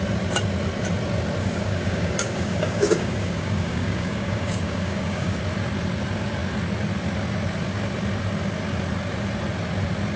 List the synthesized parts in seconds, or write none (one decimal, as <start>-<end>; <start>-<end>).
1.4-5.4